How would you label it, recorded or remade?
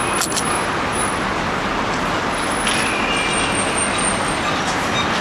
recorded